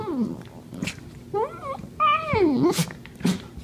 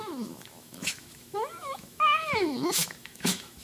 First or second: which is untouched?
first